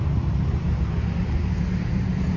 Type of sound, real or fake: fake